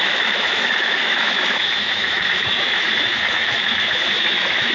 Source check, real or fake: fake